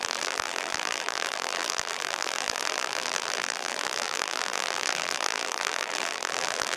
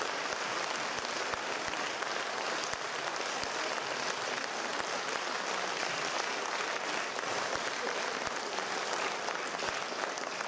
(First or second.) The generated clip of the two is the first